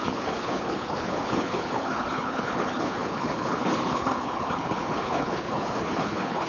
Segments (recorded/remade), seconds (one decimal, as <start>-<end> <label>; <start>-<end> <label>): 0.0-6.5 remade